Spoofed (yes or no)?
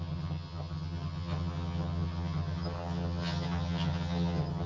yes